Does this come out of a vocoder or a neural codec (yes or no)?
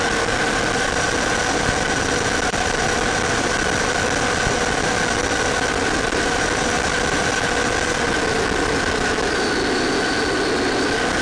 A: no